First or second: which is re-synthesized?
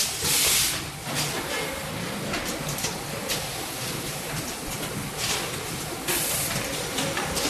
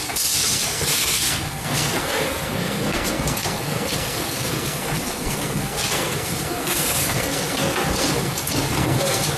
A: second